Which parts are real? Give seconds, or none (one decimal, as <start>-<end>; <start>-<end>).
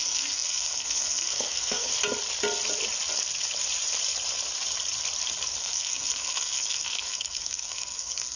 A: 1.9-5.6